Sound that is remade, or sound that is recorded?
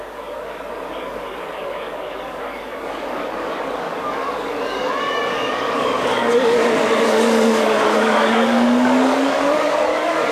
remade